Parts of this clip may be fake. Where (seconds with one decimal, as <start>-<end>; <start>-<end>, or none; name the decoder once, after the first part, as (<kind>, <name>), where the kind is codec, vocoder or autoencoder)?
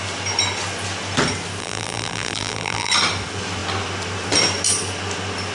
1.6-2.9 (vocoder, BigVGAN v2)